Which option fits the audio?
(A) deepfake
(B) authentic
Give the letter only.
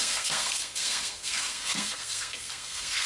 A